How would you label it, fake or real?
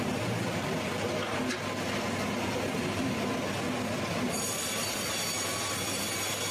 real